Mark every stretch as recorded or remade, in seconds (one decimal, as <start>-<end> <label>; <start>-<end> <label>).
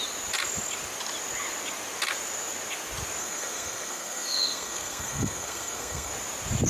0.0-3.2 recorded; 3.2-6.1 remade; 6.1-6.7 recorded